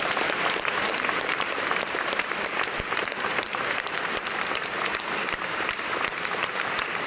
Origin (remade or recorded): remade